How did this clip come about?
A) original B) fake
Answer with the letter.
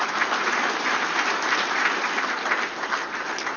A